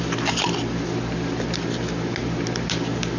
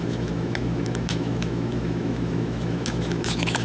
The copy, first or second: second